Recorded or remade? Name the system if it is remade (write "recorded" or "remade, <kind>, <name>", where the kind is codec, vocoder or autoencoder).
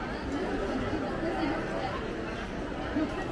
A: recorded